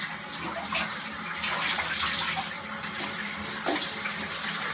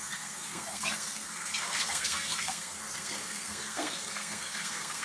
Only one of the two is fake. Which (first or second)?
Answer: second